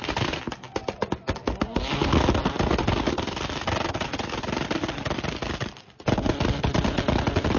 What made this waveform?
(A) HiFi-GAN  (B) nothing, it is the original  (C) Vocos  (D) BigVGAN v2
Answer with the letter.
B